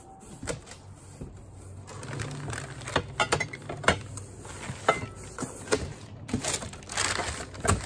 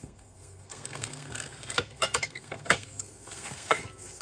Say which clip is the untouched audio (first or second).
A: first